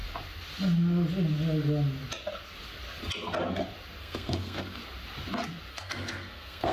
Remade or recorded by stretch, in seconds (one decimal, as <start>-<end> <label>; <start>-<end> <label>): 0.0-4.0 recorded; 4.0-4.8 remade; 4.8-5.7 recorded; 5.7-6.7 remade